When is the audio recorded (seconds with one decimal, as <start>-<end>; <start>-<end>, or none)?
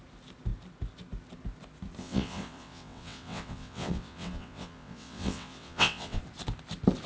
0.0-2.0; 6.2-7.1